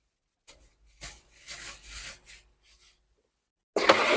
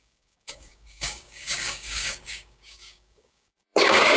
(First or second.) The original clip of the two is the first